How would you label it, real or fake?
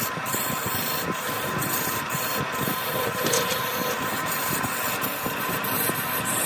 real